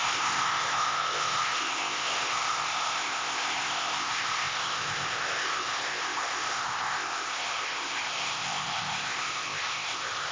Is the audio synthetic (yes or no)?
yes